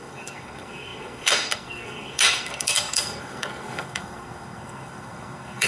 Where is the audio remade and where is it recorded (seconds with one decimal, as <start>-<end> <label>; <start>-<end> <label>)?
0.0-5.7 remade